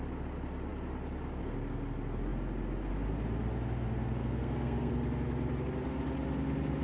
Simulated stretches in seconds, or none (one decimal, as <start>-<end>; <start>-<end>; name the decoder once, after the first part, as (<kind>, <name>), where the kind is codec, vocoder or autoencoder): 4.2-4.9 (codec, SNAC)